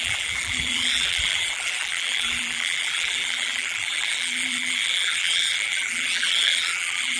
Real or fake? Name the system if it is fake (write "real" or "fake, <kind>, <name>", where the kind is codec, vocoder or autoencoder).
fake, vocoder, BigVGAN v2